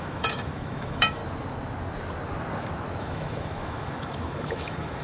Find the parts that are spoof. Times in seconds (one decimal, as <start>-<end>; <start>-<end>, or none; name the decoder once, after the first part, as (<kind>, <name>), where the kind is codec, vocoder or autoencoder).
0.0-1.2 (autoencoder, DAC-VAE); 3.0-5.0